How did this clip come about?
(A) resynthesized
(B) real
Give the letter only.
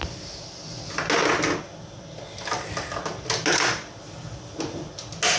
B